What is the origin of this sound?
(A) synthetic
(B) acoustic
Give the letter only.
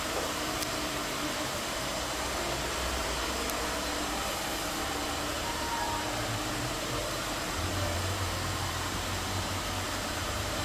A